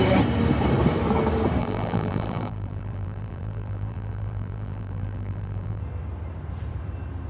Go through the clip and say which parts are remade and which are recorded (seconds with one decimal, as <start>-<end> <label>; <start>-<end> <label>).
0.0-1.6 recorded; 1.6-5.8 remade; 5.8-7.3 recorded